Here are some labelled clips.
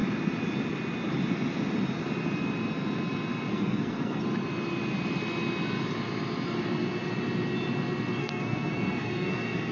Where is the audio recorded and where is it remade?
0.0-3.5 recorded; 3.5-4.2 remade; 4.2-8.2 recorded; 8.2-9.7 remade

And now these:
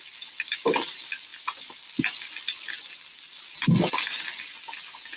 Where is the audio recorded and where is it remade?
0.0-5.2 recorded

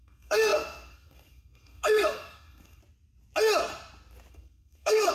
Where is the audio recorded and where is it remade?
0.0-2.8 remade; 2.8-4.3 recorded; 4.3-5.1 remade

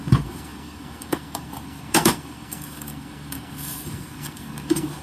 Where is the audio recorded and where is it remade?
0.0-5.0 remade